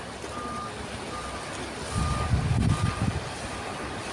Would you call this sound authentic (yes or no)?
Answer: yes